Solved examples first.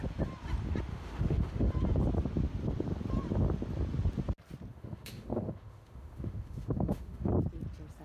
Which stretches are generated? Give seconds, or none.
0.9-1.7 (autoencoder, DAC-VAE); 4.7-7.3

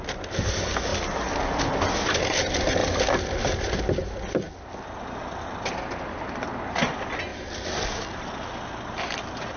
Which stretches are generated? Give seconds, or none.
2.8-3.8 (vocoder, BigVGAN v2); 7.3-8.3

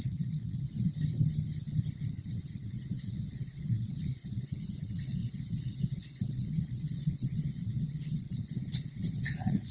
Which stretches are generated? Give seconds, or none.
0.0-0.9 (vocoder, Vocos); 2.3-9.7

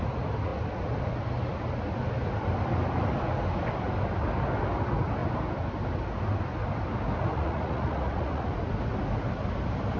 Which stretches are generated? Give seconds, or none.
7.3-8.5 (vocoder, Vocos)

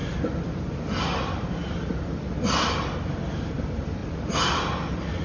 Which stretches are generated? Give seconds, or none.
none

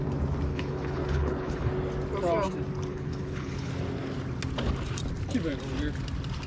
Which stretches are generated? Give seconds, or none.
0.5-1.7 (codec, HILCodec); 2.9-3.7